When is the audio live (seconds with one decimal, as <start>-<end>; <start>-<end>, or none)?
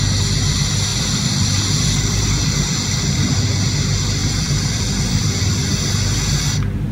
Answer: 0.0-0.9; 3.4-4.2; 5.4-6.9